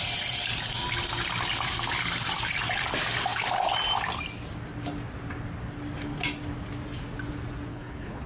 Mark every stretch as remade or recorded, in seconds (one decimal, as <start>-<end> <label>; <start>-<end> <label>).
0.0-7.7 recorded; 7.7-8.3 remade